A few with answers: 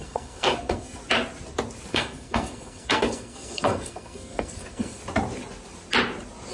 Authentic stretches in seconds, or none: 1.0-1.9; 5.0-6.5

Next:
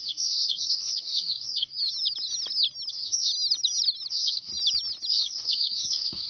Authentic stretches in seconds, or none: 1.7-2.9; 3.3-4.1; 4.5-5.1

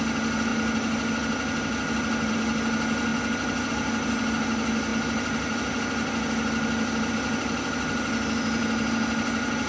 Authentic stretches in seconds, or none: 0.0-9.7

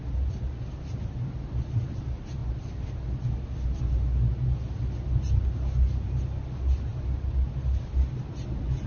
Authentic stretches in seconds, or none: 0.0-8.9